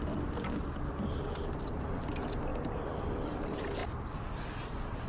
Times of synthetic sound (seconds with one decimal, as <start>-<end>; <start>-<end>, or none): 2.5-3.4

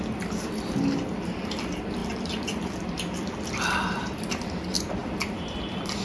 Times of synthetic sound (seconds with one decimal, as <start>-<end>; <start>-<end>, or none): 5.0-5.6

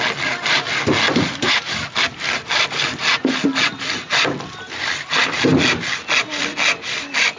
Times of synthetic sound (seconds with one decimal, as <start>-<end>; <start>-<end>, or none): 0.0-3.0; 3.6-5.5; 6.2-7.4

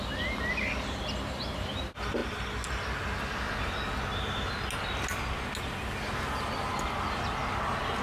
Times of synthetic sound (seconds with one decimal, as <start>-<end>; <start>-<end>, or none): none

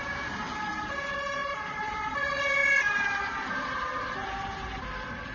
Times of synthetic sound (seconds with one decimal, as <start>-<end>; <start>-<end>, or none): 0.0-5.3

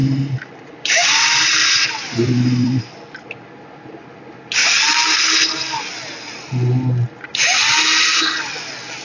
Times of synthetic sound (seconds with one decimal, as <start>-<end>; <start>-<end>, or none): 0.0-2.9

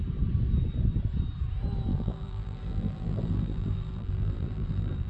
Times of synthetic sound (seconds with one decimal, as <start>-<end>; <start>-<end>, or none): 1.9-5.1